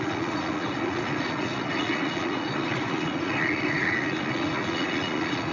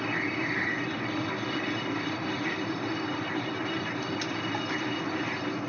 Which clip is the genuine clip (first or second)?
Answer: second